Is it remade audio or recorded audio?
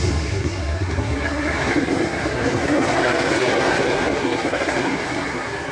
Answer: remade